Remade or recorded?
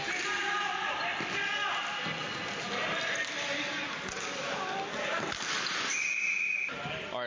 recorded